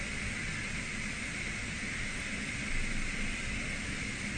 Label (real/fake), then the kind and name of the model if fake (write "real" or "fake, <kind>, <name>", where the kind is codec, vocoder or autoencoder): real